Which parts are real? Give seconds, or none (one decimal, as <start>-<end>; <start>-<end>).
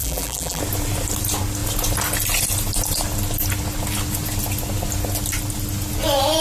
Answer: 0.6-6.4